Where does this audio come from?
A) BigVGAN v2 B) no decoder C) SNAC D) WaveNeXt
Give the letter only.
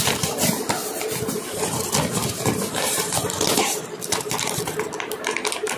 A